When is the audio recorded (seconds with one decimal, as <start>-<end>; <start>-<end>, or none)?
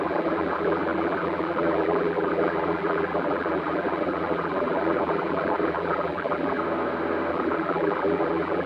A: 6.6-7.3